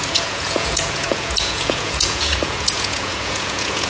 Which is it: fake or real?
fake